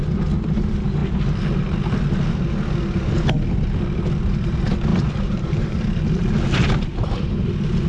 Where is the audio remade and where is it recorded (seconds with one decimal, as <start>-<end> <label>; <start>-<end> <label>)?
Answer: 0.0-4.9 recorded; 4.9-5.8 remade; 5.8-6.9 recorded; 6.9-7.5 remade; 7.5-7.9 recorded